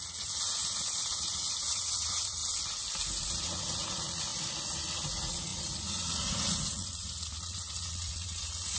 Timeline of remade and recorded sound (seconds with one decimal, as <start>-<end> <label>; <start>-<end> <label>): 0.0-2.4 remade; 2.4-3.1 recorded; 3.1-4.3 remade; 4.3-5.1 recorded; 5.1-8.8 remade